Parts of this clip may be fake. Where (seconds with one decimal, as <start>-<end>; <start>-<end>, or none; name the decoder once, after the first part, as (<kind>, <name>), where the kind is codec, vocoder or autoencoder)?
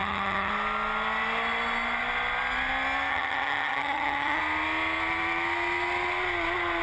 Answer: 0.0-0.5 (vocoder, HiFi-GAN); 3.1-4.4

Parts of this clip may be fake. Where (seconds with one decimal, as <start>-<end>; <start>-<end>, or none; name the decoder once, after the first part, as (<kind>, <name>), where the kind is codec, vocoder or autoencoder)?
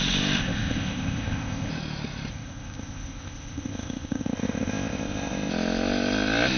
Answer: 0.4-1.7 (codec, ZipCodec); 2.3-5.5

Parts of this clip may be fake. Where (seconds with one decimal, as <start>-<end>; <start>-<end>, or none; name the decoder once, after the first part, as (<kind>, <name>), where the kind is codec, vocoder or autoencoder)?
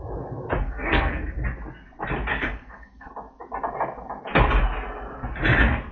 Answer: 0.6-1.2 (codec, SNAC); 2.3-3.1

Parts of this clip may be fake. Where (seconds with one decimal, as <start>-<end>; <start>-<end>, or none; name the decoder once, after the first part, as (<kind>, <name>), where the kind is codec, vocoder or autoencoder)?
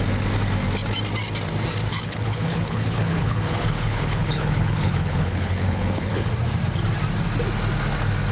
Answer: 1.9-6.3 (codec, HILCodec)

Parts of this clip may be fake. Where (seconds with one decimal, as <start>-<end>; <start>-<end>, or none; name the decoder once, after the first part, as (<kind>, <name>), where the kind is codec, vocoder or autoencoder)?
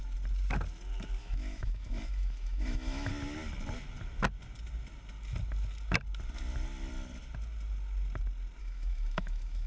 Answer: 1.2-3.1 (autoencoder, DAC-VAE); 8.6-9.7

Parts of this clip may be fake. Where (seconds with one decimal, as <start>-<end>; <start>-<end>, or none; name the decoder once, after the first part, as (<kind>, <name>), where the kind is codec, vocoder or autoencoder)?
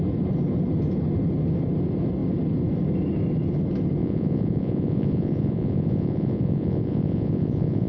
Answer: 4.0-7.9 (vocoder, Vocos)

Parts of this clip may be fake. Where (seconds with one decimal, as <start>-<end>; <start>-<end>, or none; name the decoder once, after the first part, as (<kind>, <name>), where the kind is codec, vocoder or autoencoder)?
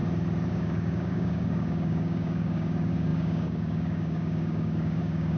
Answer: 0.5-5.4 (codec, DAC)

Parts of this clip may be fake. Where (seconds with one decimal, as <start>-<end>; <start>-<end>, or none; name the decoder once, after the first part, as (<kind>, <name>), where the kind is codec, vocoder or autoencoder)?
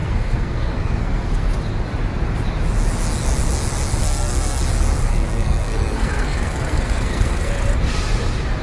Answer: 0.0-1.5 (codec, SNAC); 4.0-4.6; 5.1-7.5